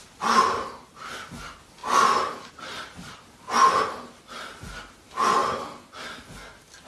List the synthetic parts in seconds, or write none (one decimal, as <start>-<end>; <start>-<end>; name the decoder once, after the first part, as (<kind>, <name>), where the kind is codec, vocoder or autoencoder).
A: none